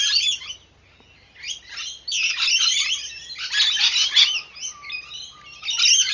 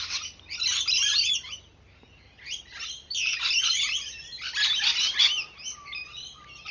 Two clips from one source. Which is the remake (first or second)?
second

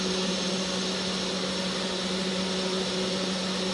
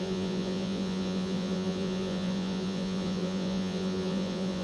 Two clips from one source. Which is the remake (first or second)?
second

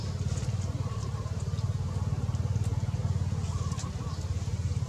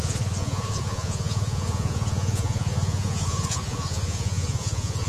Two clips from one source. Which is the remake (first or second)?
second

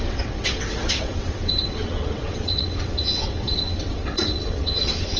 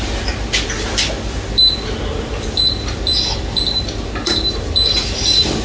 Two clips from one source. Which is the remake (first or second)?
first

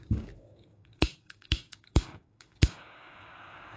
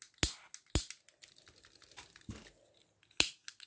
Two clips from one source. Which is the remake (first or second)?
first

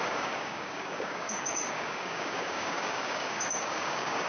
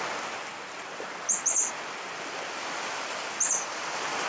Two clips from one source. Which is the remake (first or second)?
first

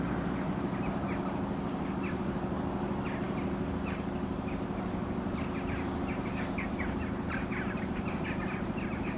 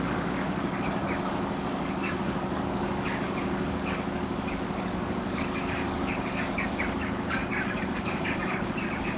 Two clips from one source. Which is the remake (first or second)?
second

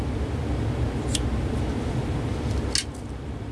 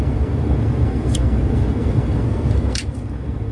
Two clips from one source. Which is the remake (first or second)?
second